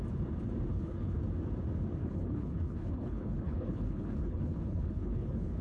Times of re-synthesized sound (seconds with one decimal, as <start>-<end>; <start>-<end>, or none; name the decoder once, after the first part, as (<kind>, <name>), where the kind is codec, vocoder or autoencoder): 0.7-1.2 (codec, HILCodec); 2.0-5.6